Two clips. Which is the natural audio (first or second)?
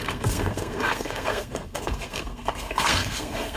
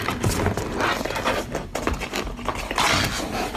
second